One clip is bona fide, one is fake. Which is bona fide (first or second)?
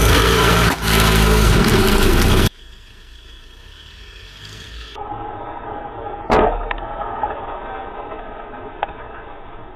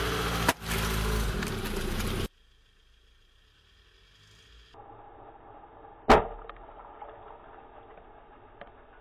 second